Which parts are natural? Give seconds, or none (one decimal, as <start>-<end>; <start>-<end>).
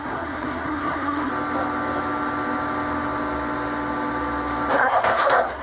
1.3-4.7